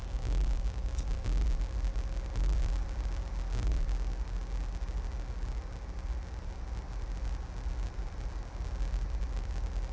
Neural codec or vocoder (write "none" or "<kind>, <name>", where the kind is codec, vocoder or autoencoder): none